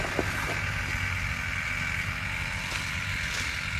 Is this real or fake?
real